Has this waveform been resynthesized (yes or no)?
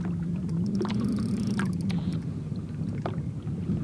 no